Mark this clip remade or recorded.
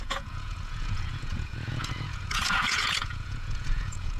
remade